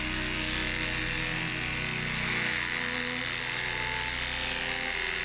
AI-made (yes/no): no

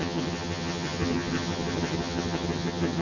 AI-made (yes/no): yes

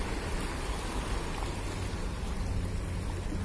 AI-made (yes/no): no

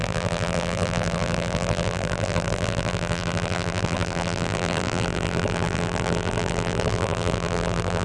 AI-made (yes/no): yes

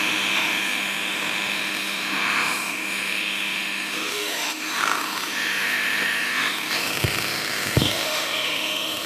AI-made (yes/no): yes